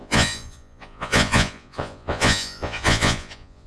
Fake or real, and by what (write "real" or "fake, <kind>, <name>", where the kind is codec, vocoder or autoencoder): fake, vocoder, Vocos